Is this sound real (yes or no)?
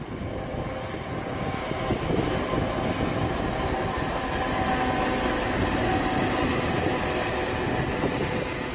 yes